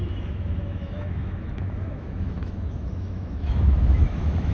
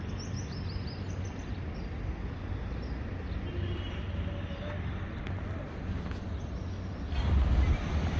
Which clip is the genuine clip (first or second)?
second